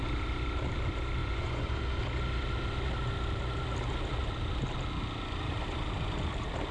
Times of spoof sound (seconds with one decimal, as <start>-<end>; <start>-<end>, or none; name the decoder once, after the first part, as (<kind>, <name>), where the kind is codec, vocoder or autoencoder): 1.2-1.8 (vocoder, Vocos)